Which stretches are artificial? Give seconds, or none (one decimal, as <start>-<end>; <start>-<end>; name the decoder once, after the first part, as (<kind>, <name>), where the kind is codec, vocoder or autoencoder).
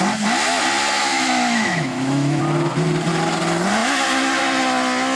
1.0-2.4 (autoencoder, DAC-VAE)